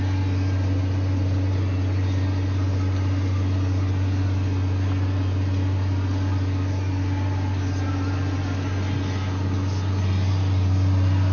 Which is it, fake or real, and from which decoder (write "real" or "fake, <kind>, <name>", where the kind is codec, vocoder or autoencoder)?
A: real